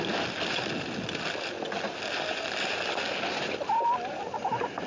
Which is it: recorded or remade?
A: recorded